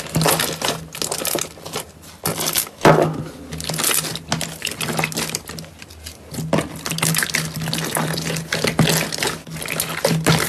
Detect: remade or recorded recorded